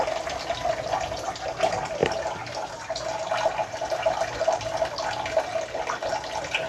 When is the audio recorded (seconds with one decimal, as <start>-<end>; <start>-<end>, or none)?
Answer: 0.0-6.7